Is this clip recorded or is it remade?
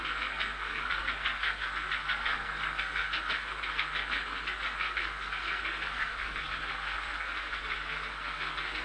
remade